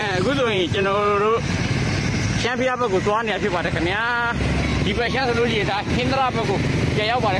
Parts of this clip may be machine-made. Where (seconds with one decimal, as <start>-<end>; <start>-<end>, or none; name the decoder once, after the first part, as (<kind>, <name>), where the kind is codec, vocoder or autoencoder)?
0.0-1.5 (vocoder, BigVGAN v2); 4.7-6.5